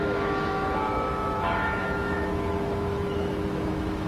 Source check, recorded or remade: remade